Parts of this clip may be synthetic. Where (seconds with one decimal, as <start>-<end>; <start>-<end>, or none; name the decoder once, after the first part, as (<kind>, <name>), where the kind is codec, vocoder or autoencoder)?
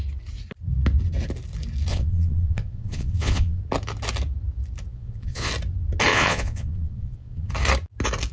1.9-3.6 (vocoder, Vocos); 4.9-5.5; 6.1-7.5